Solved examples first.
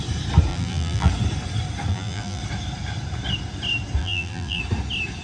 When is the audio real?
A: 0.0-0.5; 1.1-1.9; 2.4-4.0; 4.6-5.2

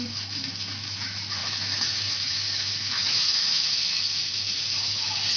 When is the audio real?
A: none

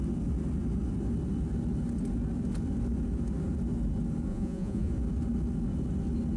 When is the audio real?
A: 0.0-4.3; 4.9-6.4

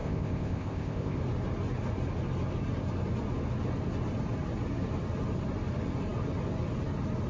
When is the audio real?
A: 1.2-7.3

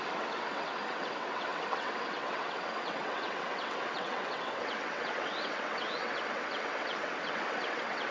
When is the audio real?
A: none

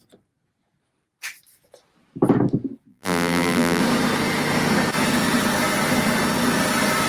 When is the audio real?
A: 0.0-2.9; 3.8-7.1

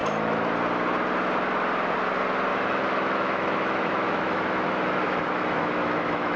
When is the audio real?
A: 0.5-2.5